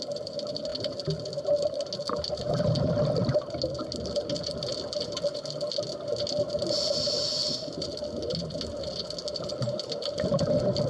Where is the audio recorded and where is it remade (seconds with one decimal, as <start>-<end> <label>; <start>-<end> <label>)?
0.0-10.9 recorded

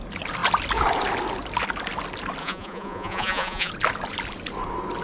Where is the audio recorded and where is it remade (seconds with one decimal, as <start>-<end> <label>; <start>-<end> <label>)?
0.0-2.4 recorded; 2.4-3.7 remade; 3.7-5.0 recorded

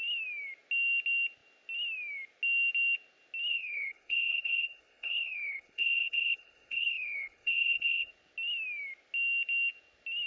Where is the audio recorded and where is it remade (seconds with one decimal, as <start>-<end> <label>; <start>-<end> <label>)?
0.0-3.5 recorded; 3.5-8.1 remade; 8.1-10.3 recorded

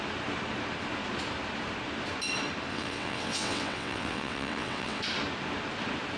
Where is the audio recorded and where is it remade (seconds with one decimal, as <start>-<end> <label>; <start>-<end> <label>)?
0.0-2.7 recorded; 2.7-5.0 remade; 5.0-6.2 recorded

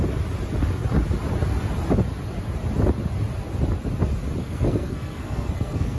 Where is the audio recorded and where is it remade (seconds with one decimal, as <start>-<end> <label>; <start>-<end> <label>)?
0.0-4.4 recorded; 4.4-6.0 remade

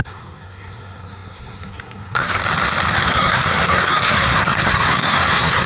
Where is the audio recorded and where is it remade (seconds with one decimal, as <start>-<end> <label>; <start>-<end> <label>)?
0.0-2.4 remade; 2.4-3.0 recorded; 3.0-5.7 remade